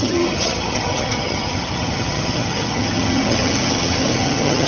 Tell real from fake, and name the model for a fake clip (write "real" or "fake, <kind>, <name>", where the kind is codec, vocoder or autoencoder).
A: fake, vocoder, HiFi-GAN